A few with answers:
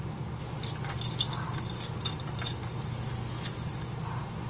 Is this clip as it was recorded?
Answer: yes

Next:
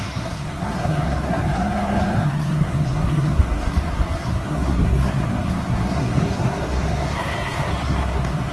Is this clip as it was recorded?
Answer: no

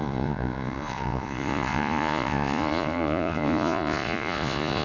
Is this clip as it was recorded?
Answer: no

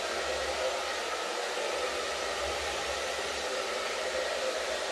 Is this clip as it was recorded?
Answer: yes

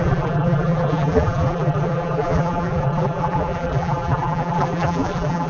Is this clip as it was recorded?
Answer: no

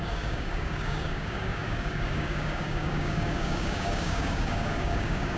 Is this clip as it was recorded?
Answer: no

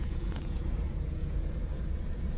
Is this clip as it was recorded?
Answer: no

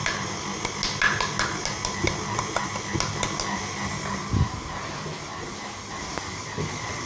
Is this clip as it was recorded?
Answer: yes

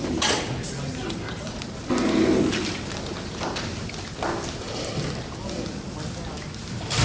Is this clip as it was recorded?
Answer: yes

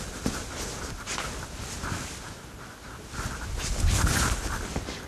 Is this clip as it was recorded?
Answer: yes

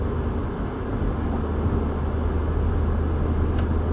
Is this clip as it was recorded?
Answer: yes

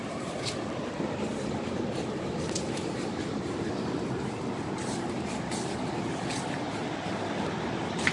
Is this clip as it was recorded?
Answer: yes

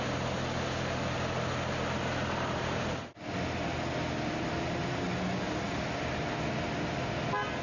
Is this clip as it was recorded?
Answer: yes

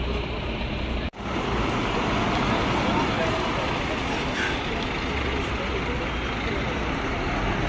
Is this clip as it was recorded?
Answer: yes